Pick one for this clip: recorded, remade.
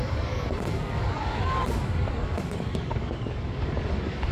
remade